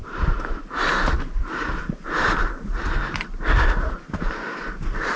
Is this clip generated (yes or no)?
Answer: yes